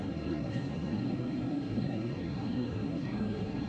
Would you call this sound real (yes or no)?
no